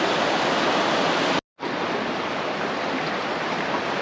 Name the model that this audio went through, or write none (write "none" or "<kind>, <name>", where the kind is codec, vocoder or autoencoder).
none